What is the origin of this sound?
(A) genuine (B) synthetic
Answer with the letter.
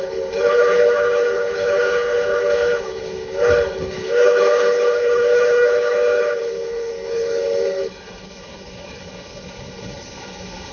B